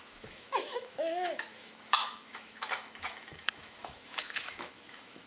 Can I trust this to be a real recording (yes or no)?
no